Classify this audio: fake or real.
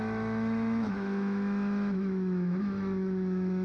fake